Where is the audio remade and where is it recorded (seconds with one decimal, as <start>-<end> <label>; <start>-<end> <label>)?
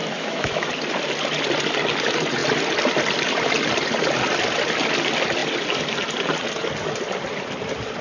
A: 0.0-0.7 remade; 0.7-8.0 recorded